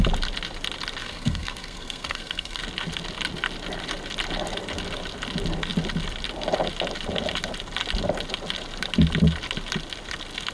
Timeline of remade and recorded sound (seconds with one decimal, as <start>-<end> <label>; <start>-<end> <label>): 0.0-1.0 recorded; 1.0-2.6 remade; 2.6-10.5 recorded